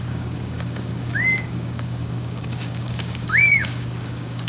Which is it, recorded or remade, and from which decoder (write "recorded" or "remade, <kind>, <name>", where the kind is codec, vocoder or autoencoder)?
remade, codec, DAC